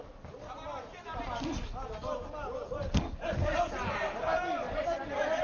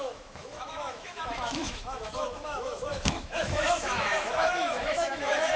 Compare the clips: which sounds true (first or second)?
first